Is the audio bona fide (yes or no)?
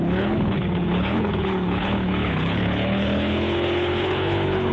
no